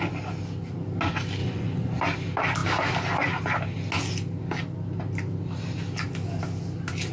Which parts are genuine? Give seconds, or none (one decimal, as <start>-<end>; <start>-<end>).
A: 0.0-1.4; 2.0-7.1